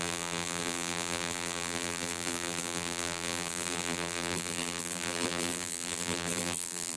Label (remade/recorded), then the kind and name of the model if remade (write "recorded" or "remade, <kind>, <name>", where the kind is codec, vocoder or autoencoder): remade, vocoder, BigVGAN v2